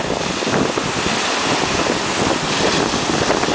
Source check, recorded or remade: recorded